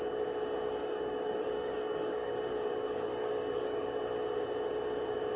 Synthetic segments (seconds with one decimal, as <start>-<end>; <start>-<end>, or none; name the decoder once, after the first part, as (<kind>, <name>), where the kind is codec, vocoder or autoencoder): 0.8-4.0 (codec, DAC)